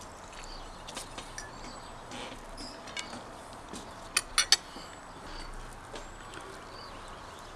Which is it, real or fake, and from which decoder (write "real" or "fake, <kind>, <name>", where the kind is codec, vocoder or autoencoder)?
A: real